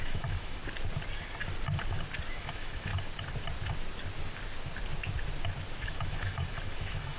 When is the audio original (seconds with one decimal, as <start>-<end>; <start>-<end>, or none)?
0.6-2.3; 2.9-5.8